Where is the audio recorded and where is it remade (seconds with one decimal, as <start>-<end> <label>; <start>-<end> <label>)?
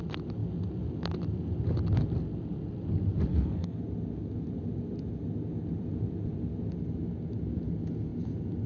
0.0-3.3 recorded; 3.3-3.8 remade; 3.8-8.7 recorded